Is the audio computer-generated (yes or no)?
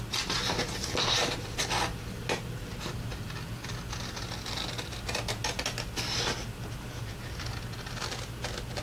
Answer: no